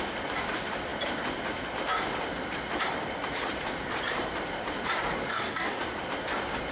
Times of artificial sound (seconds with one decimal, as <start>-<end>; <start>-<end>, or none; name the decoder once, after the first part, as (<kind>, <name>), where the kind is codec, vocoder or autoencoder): 5.3-5.8 (codec, DAC)